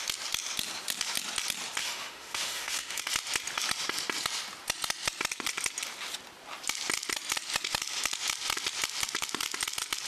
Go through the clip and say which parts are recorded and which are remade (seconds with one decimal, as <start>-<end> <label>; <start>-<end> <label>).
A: 0.0-1.8 recorded; 1.8-3.0 remade; 3.0-10.1 recorded